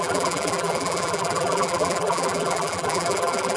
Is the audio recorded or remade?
remade